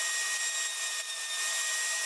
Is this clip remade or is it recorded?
recorded